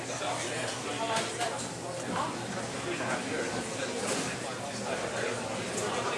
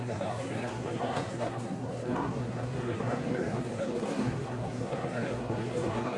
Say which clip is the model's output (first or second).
second